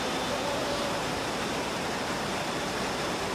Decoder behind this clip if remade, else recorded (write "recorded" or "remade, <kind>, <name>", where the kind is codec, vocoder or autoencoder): remade, vocoder, BigVGAN v2